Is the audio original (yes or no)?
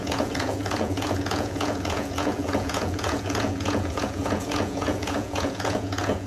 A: no